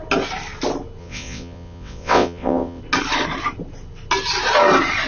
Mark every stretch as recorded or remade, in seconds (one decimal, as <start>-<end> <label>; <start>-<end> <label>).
0.0-1.0 recorded; 1.0-2.8 remade; 2.8-5.1 recorded